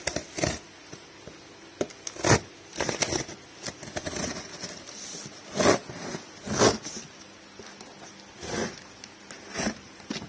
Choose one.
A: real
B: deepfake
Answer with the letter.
A